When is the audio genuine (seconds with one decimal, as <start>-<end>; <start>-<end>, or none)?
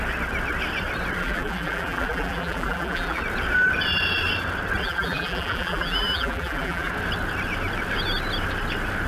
0.0-1.2; 3.2-4.8; 6.9-9.1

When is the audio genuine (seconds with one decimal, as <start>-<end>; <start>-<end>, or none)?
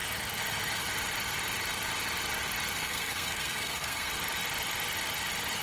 0.0-2.8; 4.1-5.6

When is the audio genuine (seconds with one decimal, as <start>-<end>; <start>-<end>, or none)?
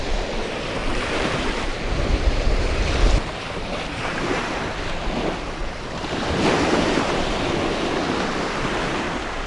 0.0-0.8; 4.6-5.6; 7.3-9.5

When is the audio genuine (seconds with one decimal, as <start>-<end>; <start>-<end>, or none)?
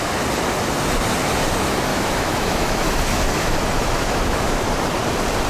0.0-1.9; 4.4-5.5